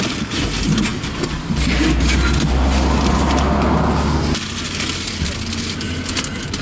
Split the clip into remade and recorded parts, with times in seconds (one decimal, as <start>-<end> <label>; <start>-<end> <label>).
0.0-6.6 recorded